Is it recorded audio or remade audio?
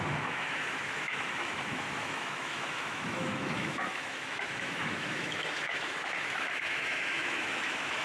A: remade